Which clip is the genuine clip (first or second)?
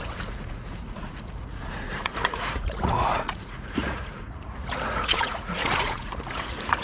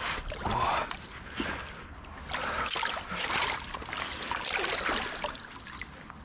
second